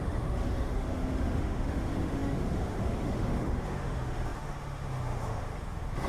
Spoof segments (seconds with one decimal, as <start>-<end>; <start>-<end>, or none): 0.0-6.1